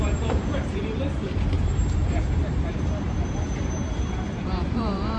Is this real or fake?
fake